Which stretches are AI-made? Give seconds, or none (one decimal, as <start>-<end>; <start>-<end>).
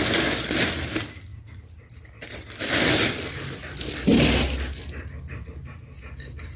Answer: 1.3-3.3